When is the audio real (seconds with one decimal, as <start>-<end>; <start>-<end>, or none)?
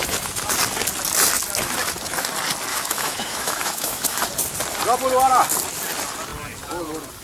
0.0-2.7; 4.2-7.2